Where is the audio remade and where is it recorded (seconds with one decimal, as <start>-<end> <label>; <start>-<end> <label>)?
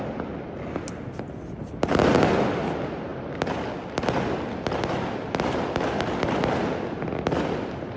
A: 0.0-8.0 recorded